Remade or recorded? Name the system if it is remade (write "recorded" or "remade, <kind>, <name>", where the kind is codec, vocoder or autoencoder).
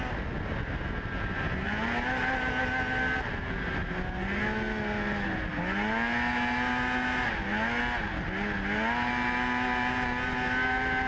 recorded